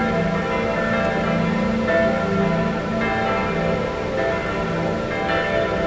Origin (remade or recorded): recorded